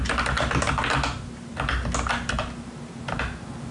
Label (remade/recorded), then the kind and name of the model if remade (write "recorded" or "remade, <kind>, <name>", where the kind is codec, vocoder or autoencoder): recorded